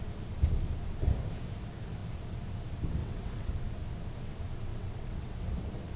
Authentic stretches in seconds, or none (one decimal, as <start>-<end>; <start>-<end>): 0.0-3.0; 3.5-4.7; 5.5-6.0